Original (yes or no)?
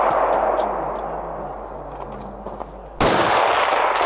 yes